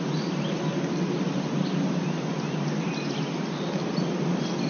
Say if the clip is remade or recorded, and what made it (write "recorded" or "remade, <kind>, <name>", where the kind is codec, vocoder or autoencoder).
recorded